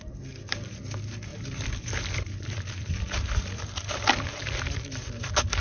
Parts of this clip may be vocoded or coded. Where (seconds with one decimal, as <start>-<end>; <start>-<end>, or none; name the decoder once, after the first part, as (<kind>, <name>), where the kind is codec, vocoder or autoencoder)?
1.3-4.4 (vocoder, BigVGAN v2)